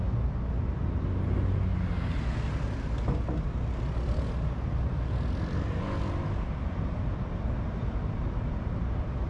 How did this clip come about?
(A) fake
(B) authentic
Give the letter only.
B